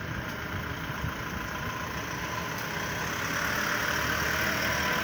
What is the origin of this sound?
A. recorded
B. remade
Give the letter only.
A